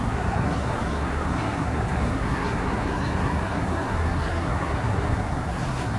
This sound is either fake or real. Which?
fake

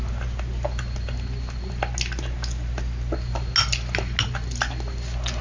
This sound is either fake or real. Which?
real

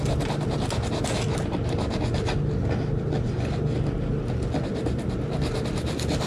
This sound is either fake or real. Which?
real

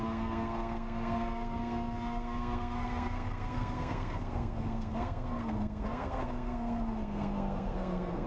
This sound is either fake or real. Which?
fake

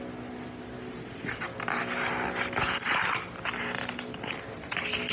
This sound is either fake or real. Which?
real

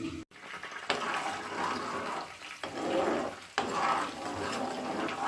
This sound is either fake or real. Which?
real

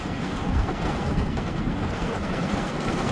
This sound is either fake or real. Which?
fake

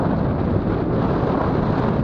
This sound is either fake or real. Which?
real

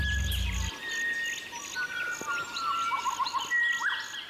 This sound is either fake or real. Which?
real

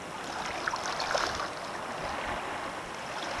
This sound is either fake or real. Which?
real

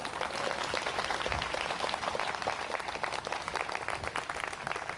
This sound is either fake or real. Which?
real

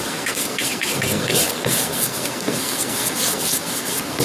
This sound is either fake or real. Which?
fake